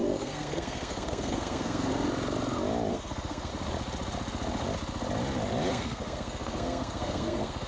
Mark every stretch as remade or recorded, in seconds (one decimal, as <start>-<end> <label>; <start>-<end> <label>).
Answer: 0.0-1.9 remade; 1.9-2.9 recorded; 2.9-3.5 remade; 3.5-5.7 recorded; 5.7-7.7 remade